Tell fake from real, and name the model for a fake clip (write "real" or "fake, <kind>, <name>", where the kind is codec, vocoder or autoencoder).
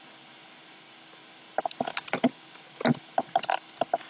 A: real